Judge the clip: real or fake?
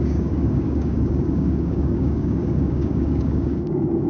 fake